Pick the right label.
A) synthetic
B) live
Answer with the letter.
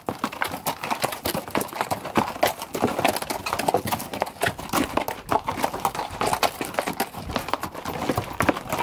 B